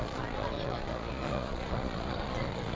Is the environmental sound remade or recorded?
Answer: remade